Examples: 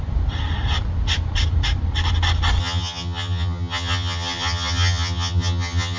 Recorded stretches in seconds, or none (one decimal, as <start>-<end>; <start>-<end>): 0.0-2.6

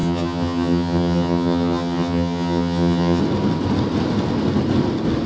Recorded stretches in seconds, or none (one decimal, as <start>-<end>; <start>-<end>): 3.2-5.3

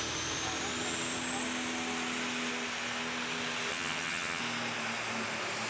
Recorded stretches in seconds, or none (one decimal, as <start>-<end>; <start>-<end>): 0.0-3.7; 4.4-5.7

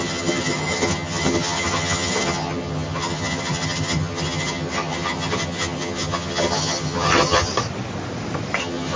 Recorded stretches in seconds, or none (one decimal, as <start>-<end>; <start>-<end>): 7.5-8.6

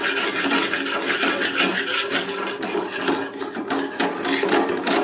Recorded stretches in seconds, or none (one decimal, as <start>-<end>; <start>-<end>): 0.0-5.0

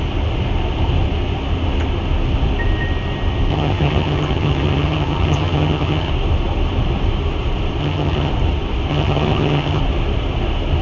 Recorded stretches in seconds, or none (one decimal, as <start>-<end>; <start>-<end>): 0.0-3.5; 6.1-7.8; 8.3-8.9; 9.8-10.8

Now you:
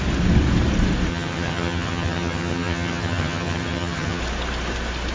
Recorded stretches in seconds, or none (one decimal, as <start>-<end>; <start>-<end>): 0.0-1.1; 4.2-5.1